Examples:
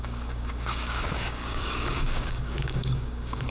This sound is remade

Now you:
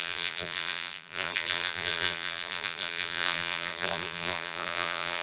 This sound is remade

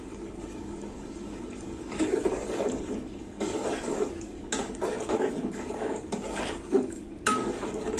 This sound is remade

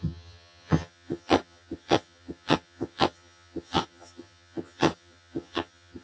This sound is remade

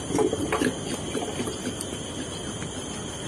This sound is recorded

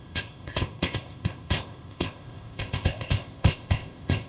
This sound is remade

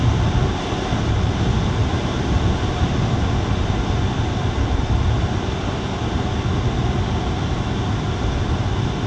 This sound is recorded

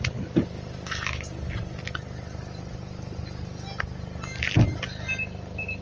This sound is recorded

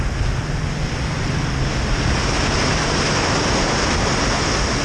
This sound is recorded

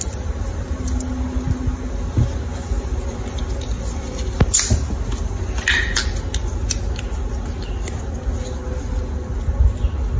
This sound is recorded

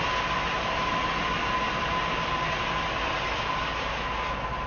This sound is recorded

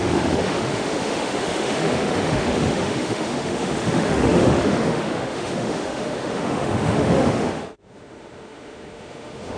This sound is remade